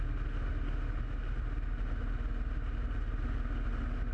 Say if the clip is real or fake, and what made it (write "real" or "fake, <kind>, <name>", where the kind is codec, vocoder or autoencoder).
real